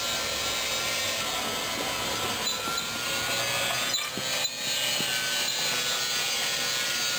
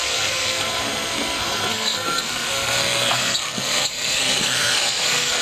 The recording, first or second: first